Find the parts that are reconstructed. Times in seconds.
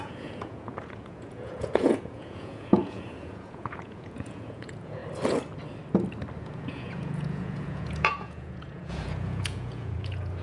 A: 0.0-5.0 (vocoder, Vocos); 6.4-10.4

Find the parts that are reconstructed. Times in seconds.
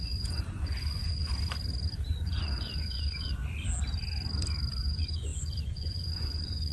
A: 0.0-1.3 (vocoder, Vocos); 2.1-3.4; 4.8-6.7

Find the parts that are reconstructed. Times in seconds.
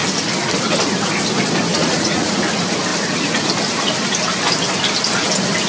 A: 1.7-2.3 (vocoder, Vocos)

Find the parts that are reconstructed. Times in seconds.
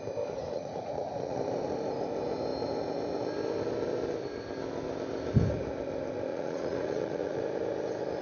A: 0.4-1.4 (vocoder, Vocos); 6.3-7.4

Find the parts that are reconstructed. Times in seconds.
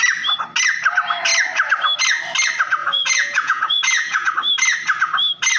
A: 2.8-4.3 (vocoder, Vocos)